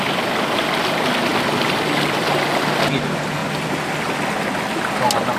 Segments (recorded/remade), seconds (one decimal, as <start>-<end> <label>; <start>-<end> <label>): 0.0-5.4 recorded